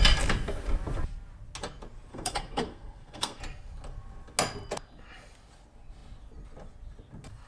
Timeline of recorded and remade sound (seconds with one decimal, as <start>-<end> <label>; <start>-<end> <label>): 0.0-2.1 recorded; 2.1-3.4 remade; 3.4-7.5 recorded